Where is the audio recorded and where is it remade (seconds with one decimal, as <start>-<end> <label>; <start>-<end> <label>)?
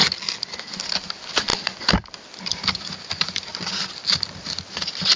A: 0.0-5.2 recorded